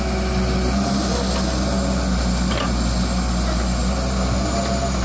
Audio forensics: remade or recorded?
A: recorded